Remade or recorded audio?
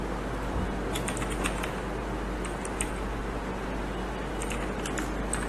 recorded